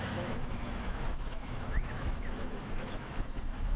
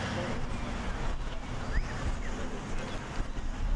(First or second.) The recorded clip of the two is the second